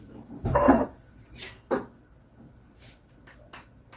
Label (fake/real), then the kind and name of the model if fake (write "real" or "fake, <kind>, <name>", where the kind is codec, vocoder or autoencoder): real